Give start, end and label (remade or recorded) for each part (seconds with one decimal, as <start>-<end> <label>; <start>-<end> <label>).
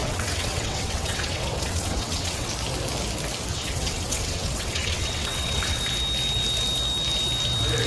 0.0-2.5 remade; 2.5-3.5 recorded; 3.5-5.8 remade; 5.8-7.9 recorded